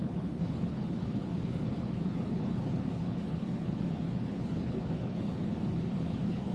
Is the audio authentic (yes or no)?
no